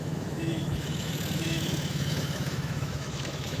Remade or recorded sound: remade